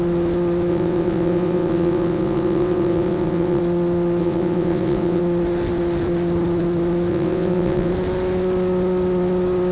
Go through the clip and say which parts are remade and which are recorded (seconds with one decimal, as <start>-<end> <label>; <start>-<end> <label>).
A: 0.0-0.7 recorded; 0.7-3.6 remade; 3.6-4.2 recorded; 4.2-5.2 remade; 5.2-7.1 recorded; 7.1-7.9 remade; 7.9-9.7 recorded